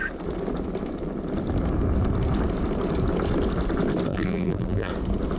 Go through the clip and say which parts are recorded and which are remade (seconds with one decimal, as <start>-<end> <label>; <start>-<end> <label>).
0.0-4.1 recorded; 4.1-4.9 remade; 4.9-5.4 recorded